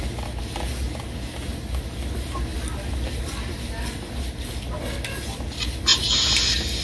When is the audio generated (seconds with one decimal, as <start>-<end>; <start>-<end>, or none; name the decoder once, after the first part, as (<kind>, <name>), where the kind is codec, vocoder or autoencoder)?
none